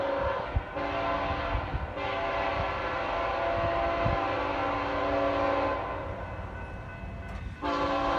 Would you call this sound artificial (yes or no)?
no